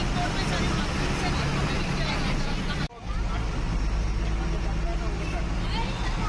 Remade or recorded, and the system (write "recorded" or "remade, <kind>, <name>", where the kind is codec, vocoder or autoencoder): recorded